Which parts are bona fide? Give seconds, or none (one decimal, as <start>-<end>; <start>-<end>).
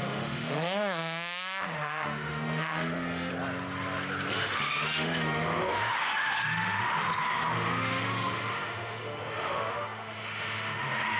3.3-4.3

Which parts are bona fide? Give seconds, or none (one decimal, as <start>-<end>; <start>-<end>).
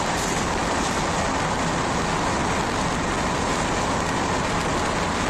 0.0-5.3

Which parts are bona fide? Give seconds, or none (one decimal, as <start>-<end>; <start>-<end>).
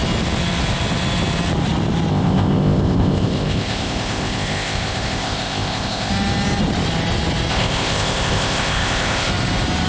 0.0-2.1; 6.1-7.5; 9.3-9.9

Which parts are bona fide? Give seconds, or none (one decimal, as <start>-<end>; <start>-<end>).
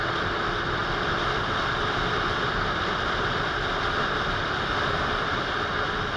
0.0-0.8; 4.5-6.2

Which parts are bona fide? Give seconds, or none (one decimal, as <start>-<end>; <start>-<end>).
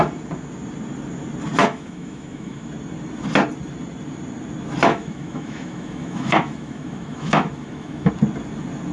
0.0-1.6; 2.7-4.9; 8.1-8.9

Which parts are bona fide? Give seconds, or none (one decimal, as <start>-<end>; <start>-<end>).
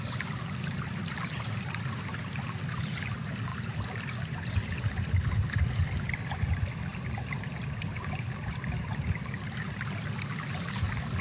0.0-6.9; 7.5-11.2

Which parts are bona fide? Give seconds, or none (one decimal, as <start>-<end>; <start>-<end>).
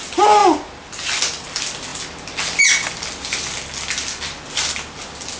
0.0-5.4